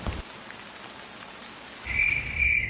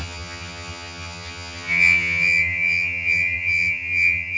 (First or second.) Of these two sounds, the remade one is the second